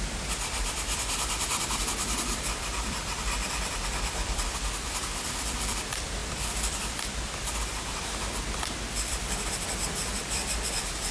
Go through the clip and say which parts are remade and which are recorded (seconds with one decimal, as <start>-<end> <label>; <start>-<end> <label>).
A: 0.0-11.1 remade